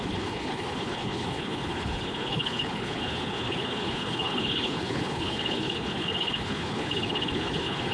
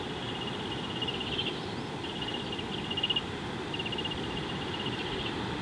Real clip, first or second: second